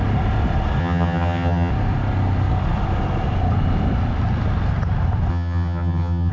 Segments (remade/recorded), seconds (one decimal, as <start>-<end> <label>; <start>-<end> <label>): 0.0-0.8 recorded; 0.8-1.7 remade; 1.7-5.3 recorded; 5.3-6.3 remade